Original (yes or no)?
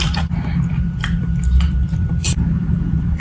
no